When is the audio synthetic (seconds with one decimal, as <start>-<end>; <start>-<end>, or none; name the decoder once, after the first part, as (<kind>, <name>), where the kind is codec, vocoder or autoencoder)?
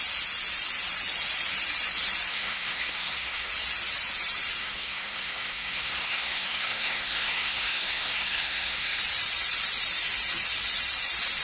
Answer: 2.3-3.5 (codec, SNAC); 4.6-9.0